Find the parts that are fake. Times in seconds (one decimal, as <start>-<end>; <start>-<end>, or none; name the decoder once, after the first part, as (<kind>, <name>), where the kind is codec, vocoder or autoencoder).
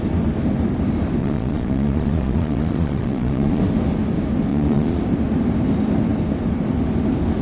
1.2-3.6 (vocoder, Vocos); 4.5-5.0